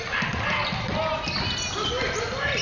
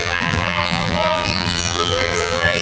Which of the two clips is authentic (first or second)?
first